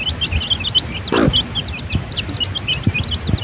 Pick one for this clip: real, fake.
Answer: real